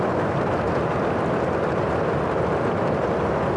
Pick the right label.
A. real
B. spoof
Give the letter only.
A